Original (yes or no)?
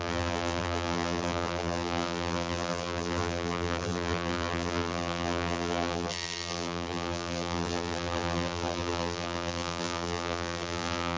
no